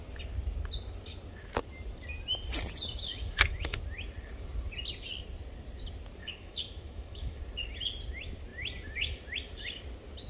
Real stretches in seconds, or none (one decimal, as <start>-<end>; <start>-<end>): 0.0-3.1; 3.8-6.2; 7.4-10.3